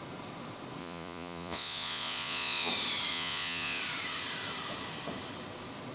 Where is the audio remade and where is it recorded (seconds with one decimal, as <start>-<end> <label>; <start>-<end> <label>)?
0.0-0.8 recorded; 0.8-2.7 remade; 2.7-3.1 recorded; 3.1-3.8 remade; 3.8-5.9 recorded